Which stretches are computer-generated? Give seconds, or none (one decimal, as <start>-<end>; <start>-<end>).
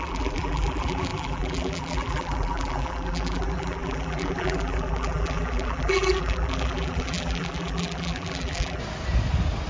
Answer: 0.0-8.8